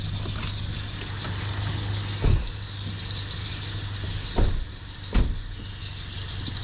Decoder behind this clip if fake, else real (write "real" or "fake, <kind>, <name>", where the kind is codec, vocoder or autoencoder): real